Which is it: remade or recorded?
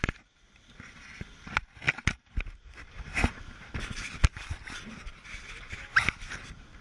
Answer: recorded